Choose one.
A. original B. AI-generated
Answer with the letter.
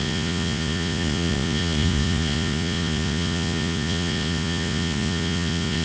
B